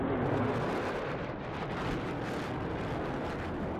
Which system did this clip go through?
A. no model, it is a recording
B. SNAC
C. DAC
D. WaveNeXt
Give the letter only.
A